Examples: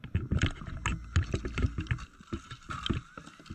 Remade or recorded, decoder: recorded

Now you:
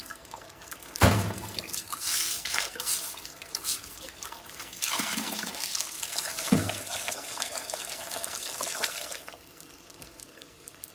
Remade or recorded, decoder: remade, codec, SNAC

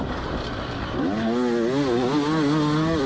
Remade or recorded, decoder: recorded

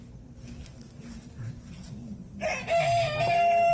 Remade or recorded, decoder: recorded